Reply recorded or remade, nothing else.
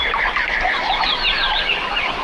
remade